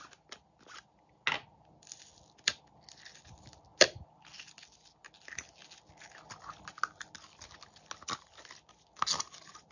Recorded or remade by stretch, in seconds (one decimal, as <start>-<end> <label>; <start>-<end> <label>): 0.0-9.7 recorded

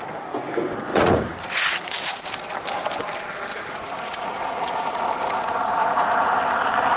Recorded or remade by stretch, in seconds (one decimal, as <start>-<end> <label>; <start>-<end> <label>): 0.0-0.9 recorded; 0.9-2.3 remade; 2.3-3.5 recorded; 3.5-6.4 remade; 6.4-7.0 recorded

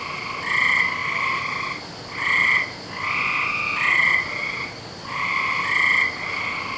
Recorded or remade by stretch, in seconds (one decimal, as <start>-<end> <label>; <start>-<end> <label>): 0.0-6.8 recorded

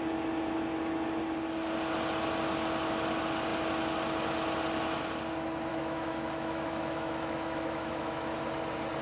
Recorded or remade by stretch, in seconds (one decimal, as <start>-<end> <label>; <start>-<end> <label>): 0.0-5.7 recorded; 5.7-8.4 remade; 8.4-9.0 recorded

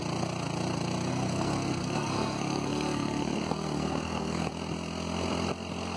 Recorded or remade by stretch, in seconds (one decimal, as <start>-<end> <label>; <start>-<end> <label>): 0.0-1.1 recorded; 1.1-4.5 remade; 4.5-6.0 recorded

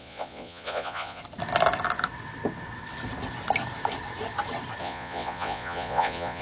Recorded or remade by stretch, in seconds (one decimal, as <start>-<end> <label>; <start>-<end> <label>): 0.0-1.2 remade; 1.2-4.8 recorded; 4.8-6.4 remade

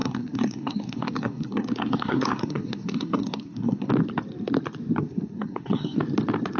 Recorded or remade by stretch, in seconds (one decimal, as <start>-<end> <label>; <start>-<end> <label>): 0.0-3.9 remade; 3.9-5.0 recorded; 5.0-6.0 remade; 6.0-6.6 recorded

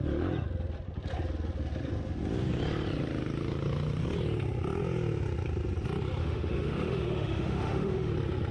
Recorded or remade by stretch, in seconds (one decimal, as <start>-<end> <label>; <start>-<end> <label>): 0.0-6.2 recorded; 6.2-8.1 remade; 8.1-8.5 recorded